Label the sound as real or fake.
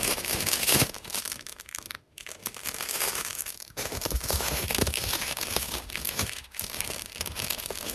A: fake